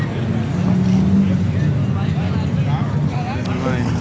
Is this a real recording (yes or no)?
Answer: yes